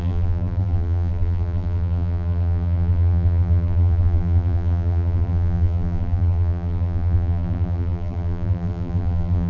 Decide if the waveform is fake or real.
fake